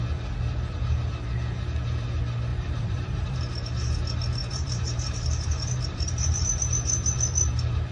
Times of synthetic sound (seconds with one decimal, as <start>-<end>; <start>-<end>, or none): 2.5-3.5; 4.4-7.5